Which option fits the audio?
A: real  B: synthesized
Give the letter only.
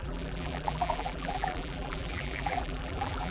B